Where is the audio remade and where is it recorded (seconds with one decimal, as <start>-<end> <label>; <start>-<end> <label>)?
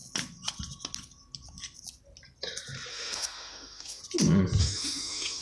0.0-2.9 recorded; 2.9-4.0 remade; 4.0-4.6 recorded; 4.6-5.4 remade